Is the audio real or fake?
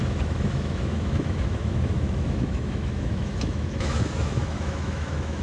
fake